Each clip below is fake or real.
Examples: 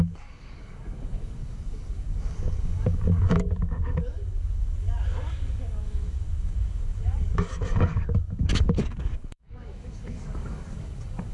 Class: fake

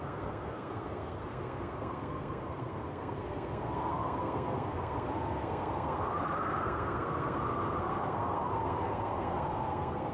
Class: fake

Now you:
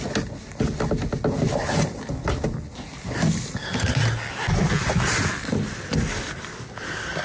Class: real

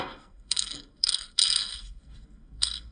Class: fake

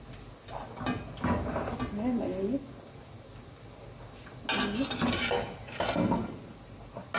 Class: real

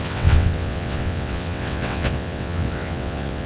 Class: fake